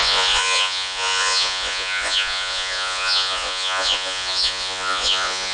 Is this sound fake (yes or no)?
yes